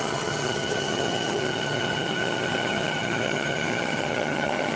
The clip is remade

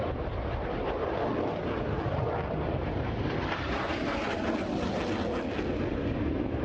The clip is recorded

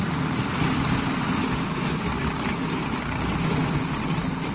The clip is recorded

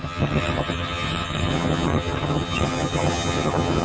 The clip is remade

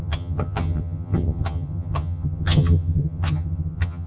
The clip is remade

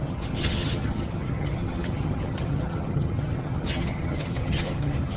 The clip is remade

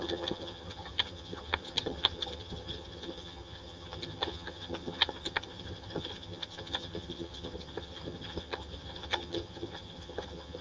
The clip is remade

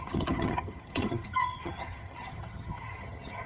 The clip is remade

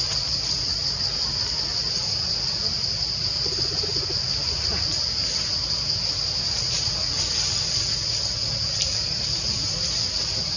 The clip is recorded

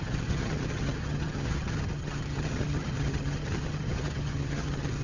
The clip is remade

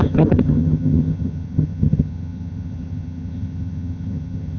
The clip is remade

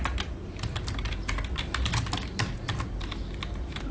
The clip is recorded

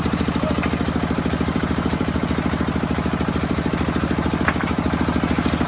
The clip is recorded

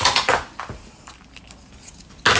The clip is recorded